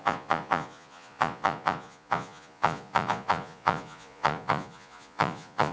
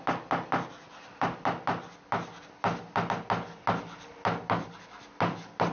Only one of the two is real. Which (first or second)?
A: second